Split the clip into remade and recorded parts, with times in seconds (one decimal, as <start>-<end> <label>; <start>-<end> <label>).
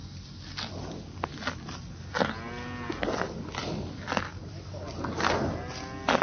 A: 0.0-6.2 recorded